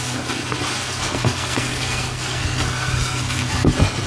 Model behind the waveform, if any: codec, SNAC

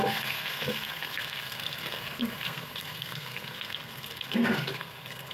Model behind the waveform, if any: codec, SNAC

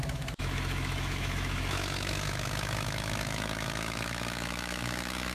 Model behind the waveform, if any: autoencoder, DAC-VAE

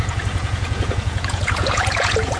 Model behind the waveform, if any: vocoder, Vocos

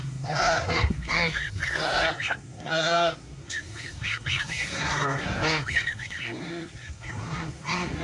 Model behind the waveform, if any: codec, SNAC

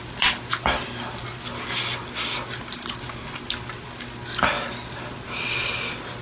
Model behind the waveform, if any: none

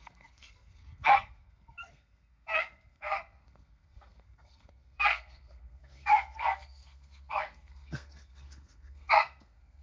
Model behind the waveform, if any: codec, SNAC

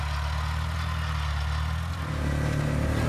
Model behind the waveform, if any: none